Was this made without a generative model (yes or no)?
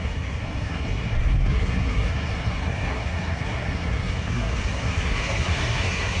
no